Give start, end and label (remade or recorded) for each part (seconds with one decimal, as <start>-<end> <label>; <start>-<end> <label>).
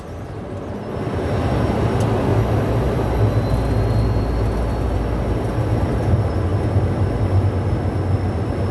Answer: 0.0-8.7 recorded